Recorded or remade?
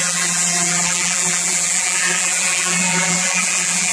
remade